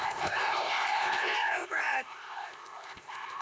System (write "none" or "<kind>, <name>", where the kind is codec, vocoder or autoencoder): codec, ZipCodec